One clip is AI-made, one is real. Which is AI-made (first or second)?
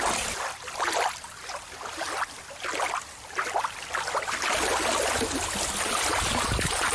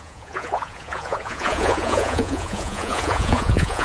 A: second